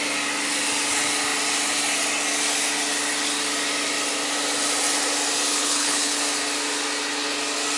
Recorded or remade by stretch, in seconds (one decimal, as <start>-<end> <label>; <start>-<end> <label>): 0.0-5.5 recorded; 5.5-6.2 remade; 6.2-7.8 recorded